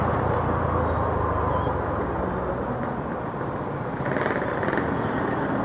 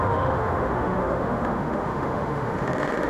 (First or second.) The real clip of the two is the first